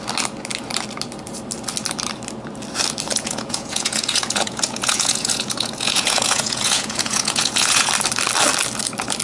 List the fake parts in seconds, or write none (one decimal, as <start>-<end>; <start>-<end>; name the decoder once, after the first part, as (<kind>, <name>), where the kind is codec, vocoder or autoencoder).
3.1-7.9 (vocoder, Vocos)